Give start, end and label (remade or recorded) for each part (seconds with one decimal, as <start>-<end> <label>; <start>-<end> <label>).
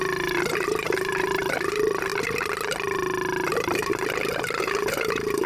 0.0-2.1 remade; 2.1-3.5 recorded; 3.5-3.9 remade; 3.9-4.6 recorded; 4.6-5.5 remade